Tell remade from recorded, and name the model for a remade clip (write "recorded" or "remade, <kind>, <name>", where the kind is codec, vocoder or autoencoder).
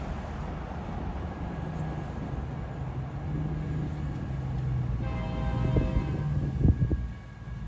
recorded